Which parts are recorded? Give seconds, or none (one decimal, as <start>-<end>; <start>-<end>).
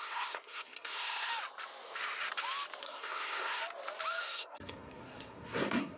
1.3-2.8; 3.6-4.2